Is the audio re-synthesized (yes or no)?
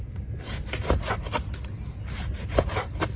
no